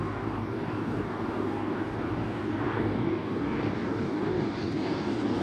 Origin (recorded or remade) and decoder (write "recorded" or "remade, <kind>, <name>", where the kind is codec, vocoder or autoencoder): remade, codec, DAC